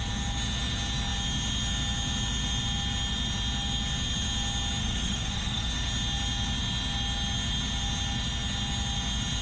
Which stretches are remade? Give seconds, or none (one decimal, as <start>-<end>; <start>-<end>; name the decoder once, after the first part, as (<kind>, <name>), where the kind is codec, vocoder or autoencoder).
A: 4.8-5.7 (codec, SNAC)